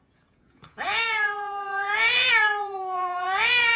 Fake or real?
fake